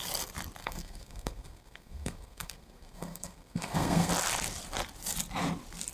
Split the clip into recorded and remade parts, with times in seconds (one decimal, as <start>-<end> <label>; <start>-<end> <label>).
0.0-0.6 recorded; 0.6-4.1 remade; 4.1-5.9 recorded